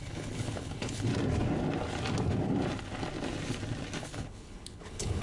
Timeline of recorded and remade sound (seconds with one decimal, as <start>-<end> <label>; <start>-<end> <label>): 0.0-1.1 remade; 1.1-4.0 recorded; 4.0-5.2 remade